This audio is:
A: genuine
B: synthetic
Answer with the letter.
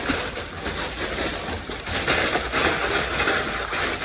A